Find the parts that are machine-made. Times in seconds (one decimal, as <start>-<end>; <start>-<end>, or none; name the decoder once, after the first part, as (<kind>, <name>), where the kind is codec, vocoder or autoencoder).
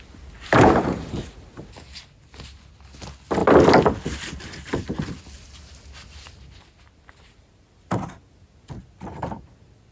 none